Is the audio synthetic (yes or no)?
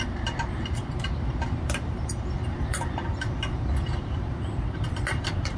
yes